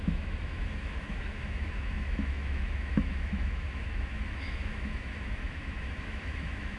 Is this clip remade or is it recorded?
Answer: remade